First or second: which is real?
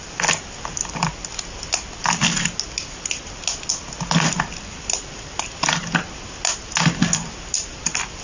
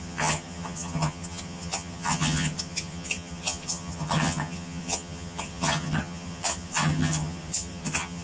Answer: first